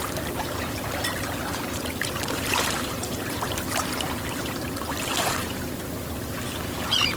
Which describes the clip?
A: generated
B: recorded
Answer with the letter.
A